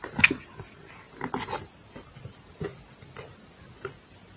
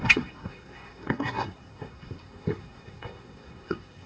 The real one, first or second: first